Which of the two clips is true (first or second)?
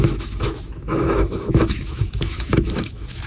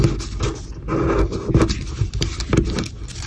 second